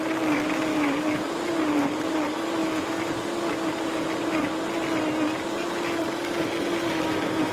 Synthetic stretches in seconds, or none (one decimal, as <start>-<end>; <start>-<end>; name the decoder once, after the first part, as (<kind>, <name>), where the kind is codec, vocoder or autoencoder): 0.7-1.5 (autoencoder, DAC-VAE)